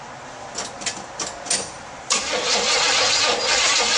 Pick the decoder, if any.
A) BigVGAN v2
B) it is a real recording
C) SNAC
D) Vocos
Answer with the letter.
B